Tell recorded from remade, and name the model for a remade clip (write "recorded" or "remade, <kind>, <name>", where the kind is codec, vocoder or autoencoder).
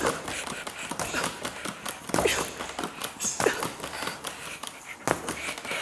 recorded